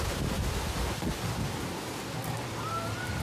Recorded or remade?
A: recorded